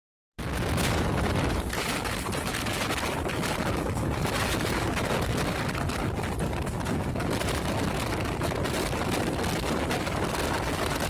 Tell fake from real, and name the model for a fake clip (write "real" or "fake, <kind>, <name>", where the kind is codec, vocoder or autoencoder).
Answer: real